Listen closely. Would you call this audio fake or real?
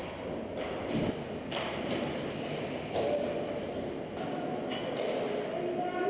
real